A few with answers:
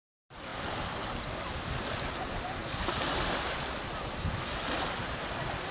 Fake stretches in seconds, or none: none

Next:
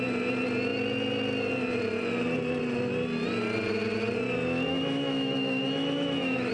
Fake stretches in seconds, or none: 4.7-6.5 (autoencoder, DAC-VAE)

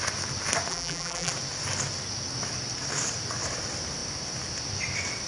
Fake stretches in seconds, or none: 0.7-1.3 (vocoder, BigVGAN v2)